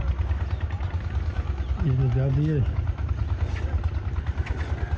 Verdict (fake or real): real